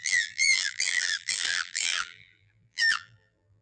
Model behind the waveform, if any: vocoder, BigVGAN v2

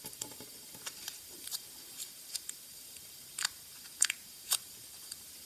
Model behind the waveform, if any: vocoder, BigVGAN v2